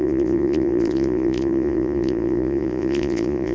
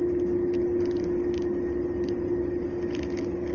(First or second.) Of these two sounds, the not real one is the first